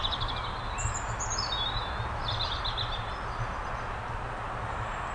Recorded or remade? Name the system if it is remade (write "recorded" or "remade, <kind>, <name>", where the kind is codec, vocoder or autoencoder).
recorded